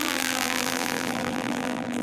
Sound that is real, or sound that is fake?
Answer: fake